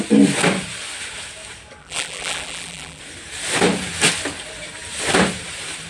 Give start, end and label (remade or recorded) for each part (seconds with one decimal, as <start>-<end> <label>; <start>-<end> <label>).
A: 0.0-1.8 recorded; 1.8-3.0 remade; 3.0-5.9 recorded